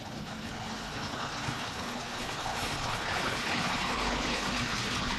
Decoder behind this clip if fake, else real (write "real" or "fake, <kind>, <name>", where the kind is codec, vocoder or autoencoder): fake, codec, HILCodec